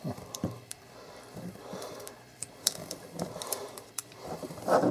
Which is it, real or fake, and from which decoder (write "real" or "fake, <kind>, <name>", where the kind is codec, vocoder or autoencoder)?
fake, vocoder, BigVGAN v2